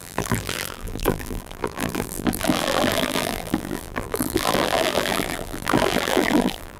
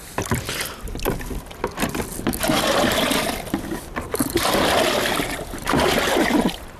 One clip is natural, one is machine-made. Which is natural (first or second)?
second